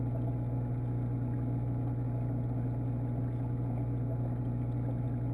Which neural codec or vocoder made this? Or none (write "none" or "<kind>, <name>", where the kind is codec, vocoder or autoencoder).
none